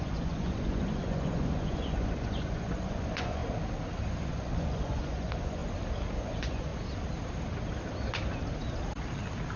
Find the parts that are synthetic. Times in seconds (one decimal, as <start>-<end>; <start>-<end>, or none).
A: 0.0-3.4; 4.2-5.6; 6.2-6.7